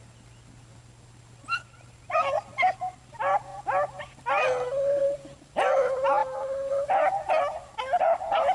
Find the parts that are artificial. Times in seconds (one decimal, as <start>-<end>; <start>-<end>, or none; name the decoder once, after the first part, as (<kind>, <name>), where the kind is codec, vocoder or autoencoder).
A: none